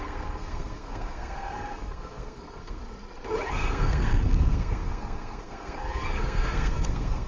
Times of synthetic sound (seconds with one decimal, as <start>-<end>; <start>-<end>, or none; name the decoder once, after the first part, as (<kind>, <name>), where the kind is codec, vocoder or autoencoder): 0.0-2.8 (codec, SNAC); 3.5-7.3